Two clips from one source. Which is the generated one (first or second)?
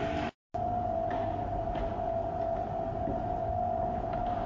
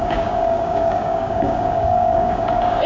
second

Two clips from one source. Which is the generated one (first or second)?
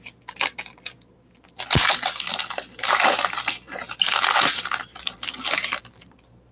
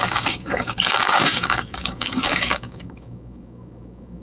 second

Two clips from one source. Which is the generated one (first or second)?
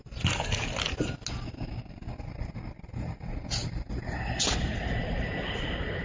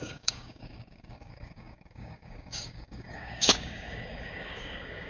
second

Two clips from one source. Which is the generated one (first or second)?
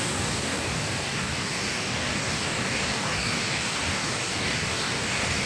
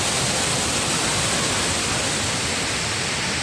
first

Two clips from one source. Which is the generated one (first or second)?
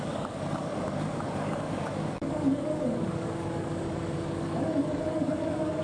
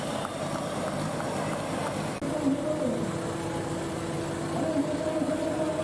first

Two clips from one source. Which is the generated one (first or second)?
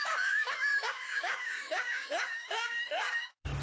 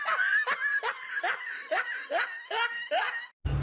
first